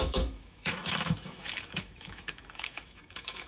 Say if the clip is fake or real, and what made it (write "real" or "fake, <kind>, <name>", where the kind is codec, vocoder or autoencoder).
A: fake, autoencoder, DAC-VAE